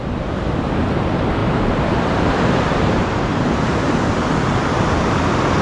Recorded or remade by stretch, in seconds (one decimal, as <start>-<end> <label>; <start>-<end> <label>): 0.0-1.4 recorded; 1.4-2.7 remade; 2.7-5.6 recorded